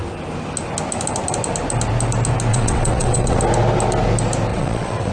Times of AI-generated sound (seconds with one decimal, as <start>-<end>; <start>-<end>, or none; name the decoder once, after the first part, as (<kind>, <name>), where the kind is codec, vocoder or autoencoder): 2.5-3.4 (vocoder, WaveNeXt); 4.5-5.1